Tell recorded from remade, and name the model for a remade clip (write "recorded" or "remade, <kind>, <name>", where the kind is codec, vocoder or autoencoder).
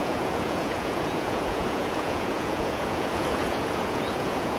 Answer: remade, vocoder, Vocos